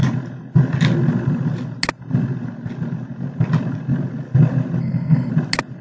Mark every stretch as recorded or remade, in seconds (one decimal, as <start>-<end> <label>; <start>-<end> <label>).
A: 0.0-4.8 recorded; 4.8-5.3 remade; 5.3-5.8 recorded